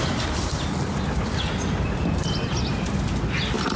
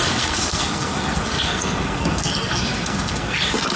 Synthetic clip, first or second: second